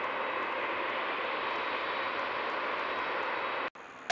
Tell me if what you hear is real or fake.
real